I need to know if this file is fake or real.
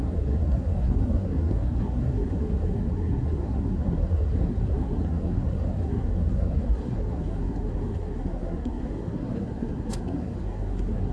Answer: fake